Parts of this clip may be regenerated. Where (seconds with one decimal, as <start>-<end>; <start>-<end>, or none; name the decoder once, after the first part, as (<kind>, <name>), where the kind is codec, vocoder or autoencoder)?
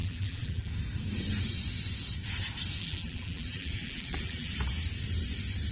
0.0-0.7 (vocoder, BigVGAN v2); 2.8-4.5